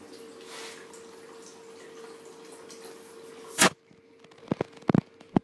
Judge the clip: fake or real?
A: real